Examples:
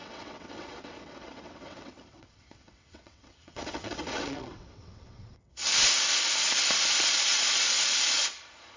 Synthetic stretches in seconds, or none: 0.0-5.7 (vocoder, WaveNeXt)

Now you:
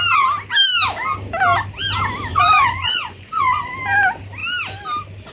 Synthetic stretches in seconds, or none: 2.3-3.7 (vocoder, Vocos)

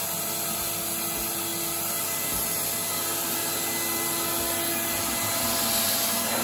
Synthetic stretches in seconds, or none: none